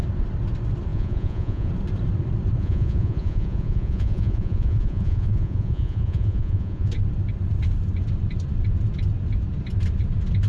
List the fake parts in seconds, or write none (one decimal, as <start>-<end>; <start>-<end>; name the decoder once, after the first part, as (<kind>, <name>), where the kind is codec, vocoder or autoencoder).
0.9-1.7 (vocoder, Vocos); 2.6-6.9